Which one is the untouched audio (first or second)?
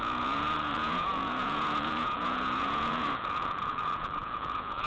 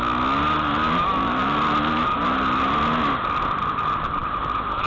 second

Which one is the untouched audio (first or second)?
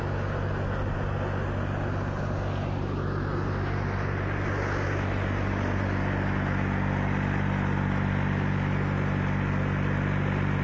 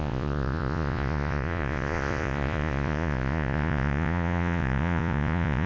first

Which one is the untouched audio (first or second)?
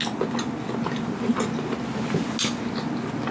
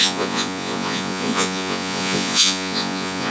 first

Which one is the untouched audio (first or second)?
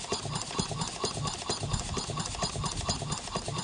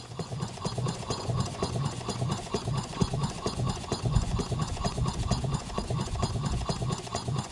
first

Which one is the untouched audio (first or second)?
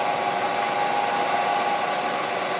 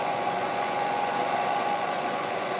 first